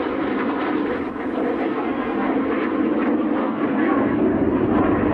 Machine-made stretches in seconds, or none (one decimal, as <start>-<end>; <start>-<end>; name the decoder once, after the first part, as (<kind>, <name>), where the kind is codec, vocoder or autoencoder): 1.7-2.3 (codec, SNAC); 3.4-4.2